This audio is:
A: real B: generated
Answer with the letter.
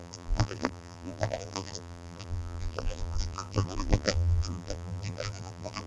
B